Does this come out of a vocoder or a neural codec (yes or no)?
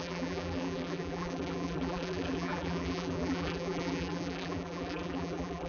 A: yes